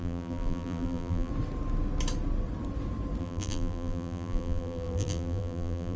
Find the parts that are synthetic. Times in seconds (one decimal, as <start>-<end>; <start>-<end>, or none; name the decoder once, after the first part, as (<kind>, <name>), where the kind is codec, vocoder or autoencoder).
0.0-1.3 (vocoder, BigVGAN v2); 3.2-6.0